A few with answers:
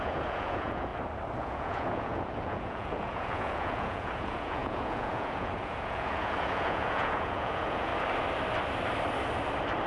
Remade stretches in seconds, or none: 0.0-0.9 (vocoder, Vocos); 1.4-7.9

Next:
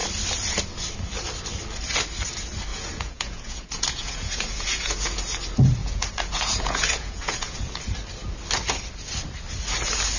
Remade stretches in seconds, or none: 2.7-5.2 (vocoder, Vocos); 5.8-7.8